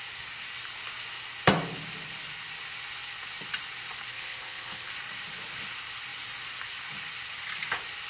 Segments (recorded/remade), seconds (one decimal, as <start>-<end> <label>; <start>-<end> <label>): 0.0-4.1 recorded; 4.1-4.9 remade; 4.9-8.1 recorded